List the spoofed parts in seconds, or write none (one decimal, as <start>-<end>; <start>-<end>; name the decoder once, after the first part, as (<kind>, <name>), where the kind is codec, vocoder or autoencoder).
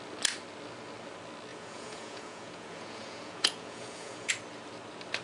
1.5-4.3 (vocoder, Vocos)